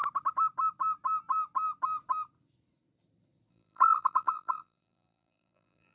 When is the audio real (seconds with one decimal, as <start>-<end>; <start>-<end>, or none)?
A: 0.0-3.5